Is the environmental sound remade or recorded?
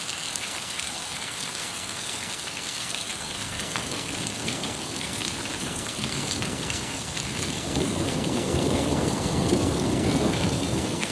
remade